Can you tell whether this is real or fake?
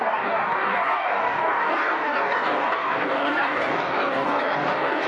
fake